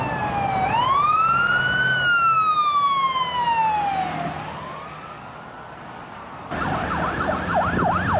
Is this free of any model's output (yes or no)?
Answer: yes